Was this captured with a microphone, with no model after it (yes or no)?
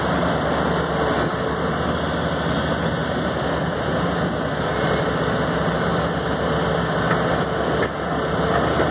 yes